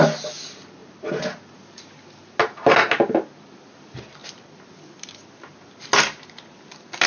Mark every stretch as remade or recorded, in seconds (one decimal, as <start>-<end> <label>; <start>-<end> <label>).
0.0-0.8 recorded; 0.8-1.8 remade; 1.8-7.1 recorded